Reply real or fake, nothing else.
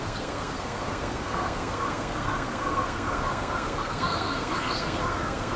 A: fake